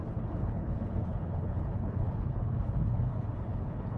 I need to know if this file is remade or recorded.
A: remade